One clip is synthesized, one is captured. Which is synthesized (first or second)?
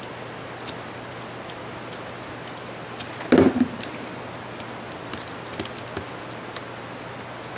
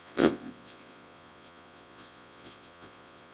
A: second